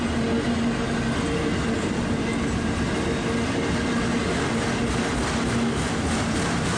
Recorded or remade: recorded